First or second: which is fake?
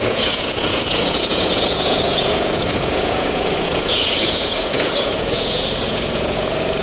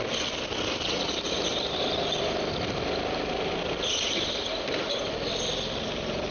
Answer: first